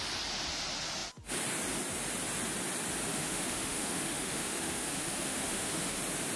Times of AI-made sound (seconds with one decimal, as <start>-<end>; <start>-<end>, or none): 3.1-6.0